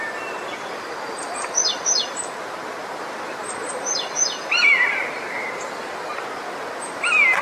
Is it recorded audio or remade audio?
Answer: recorded